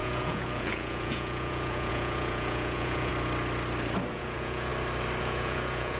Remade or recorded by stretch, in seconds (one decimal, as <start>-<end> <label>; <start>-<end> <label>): 0.0-3.1 remade; 3.1-4.1 recorded; 4.1-4.7 remade; 4.7-5.2 recorded; 5.2-6.0 remade

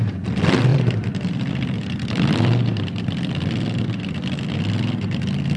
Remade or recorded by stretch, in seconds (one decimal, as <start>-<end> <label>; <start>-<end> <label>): 0.0-5.6 remade

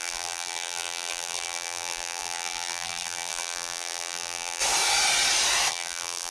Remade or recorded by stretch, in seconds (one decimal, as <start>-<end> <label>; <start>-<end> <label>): 0.0-4.6 remade; 4.6-5.7 recorded; 5.7-6.3 remade

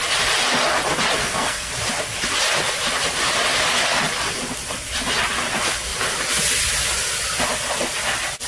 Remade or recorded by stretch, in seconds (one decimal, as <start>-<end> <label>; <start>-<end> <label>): 0.0-1.2 recorded; 1.2-1.7 remade; 1.7-8.5 recorded

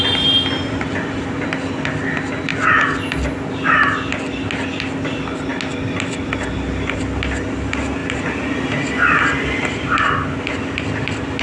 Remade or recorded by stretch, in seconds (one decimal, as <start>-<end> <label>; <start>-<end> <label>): 0.0-11.4 recorded

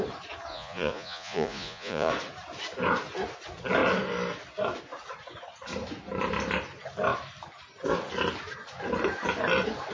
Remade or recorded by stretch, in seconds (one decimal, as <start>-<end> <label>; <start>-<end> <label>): 0.0-0.5 recorded; 0.5-2.1 remade; 2.1-9.9 recorded

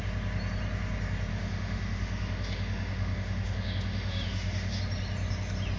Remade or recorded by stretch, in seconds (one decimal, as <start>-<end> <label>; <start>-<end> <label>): 0.0-1.3 recorded; 1.3-4.8 remade; 4.8-5.8 recorded

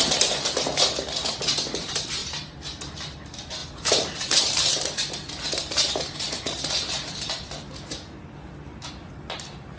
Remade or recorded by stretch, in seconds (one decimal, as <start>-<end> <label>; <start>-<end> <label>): 0.0-2.2 recorded; 2.2-2.8 remade; 2.8-3.6 recorded; 3.6-4.6 remade; 4.6-9.8 recorded